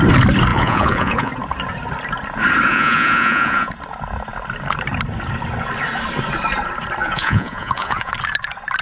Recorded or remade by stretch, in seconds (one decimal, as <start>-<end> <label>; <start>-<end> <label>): 0.0-0.5 recorded; 0.5-1.3 remade; 1.3-2.7 recorded; 2.7-3.7 remade; 3.7-7.0 recorded; 7.0-8.1 remade; 8.1-8.8 recorded